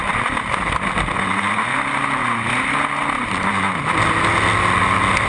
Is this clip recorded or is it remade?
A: recorded